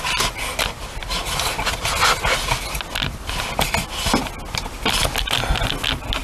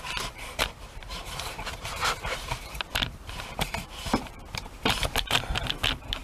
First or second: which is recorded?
first